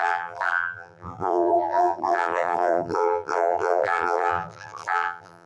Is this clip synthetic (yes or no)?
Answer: yes